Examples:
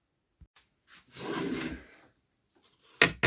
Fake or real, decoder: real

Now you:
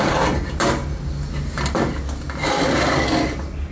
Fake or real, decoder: fake, vocoder, BigVGAN v2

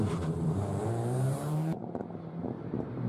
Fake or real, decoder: fake, vocoder, BigVGAN v2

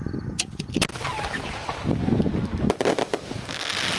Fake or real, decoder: real